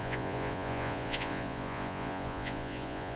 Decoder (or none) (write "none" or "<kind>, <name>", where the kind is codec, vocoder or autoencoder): vocoder, Vocos